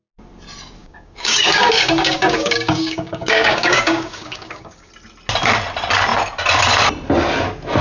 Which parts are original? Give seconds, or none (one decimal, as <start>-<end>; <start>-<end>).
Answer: 0.0-0.8; 4.9-7.8